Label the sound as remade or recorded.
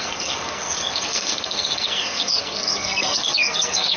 remade